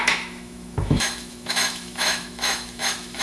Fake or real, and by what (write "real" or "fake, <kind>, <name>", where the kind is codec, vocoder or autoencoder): fake, autoencoder, DAC-VAE